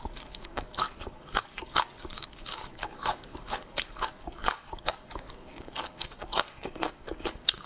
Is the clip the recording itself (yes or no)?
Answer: no